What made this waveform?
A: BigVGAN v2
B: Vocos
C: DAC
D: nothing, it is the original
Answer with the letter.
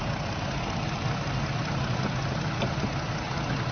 D